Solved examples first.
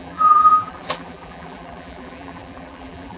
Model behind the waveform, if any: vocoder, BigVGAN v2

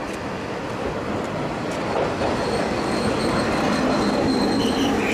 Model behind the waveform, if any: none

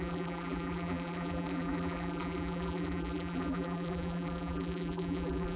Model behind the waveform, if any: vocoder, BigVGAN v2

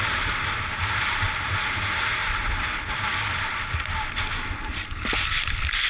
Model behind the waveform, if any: none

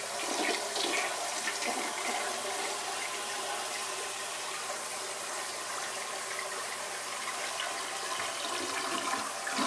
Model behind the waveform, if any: none